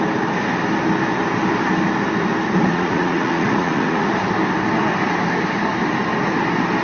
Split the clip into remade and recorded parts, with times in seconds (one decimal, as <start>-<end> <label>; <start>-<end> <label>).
0.0-2.7 recorded; 2.7-4.1 remade; 4.1-6.8 recorded